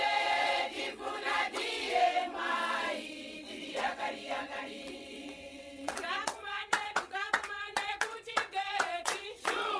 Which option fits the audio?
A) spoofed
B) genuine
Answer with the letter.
A